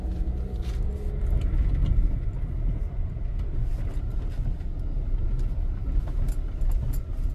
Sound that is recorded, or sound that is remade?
recorded